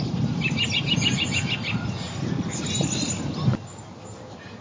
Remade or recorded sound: recorded